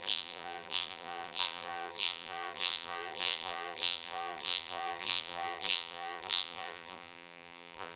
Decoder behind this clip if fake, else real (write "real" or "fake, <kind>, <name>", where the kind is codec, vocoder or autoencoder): fake, vocoder, BigVGAN v2